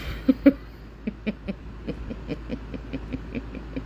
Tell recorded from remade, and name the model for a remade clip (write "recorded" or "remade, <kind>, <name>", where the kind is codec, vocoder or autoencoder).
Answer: recorded